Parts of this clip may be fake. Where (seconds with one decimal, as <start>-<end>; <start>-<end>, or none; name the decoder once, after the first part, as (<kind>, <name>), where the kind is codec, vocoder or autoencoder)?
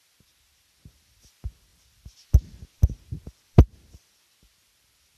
none